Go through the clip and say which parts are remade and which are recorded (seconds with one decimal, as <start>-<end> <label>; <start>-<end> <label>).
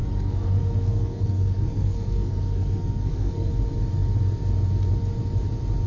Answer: 0.0-3.5 remade; 3.5-5.9 recorded